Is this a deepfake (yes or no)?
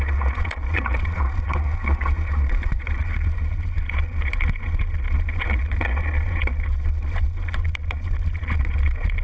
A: yes